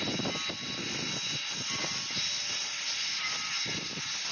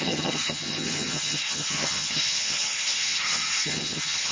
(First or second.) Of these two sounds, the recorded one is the first